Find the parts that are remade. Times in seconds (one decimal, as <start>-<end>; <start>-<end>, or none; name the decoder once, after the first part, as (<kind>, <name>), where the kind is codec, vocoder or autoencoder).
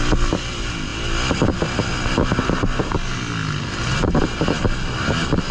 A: none